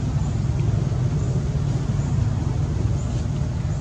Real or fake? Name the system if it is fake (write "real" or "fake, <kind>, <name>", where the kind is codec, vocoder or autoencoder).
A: real